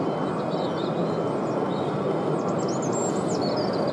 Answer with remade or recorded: recorded